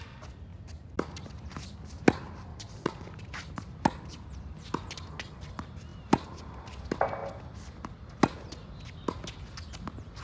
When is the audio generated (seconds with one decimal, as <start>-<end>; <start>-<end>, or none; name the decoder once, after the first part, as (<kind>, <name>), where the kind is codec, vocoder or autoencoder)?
2.5-3.1 (vocoder, Vocos)